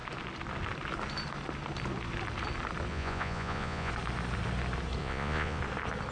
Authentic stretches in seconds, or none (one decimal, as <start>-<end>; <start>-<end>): 0.0-2.9; 3.9-5.0; 5.6-6.1